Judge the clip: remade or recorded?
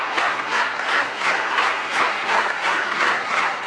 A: remade